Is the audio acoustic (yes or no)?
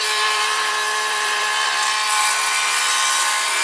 no